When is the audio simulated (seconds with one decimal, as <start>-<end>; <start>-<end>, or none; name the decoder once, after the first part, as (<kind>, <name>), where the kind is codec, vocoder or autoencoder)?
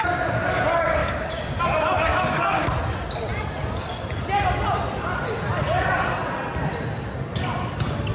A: 1.0-1.6 (codec, DAC); 2.1-2.7